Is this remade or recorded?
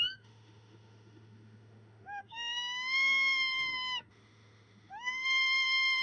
remade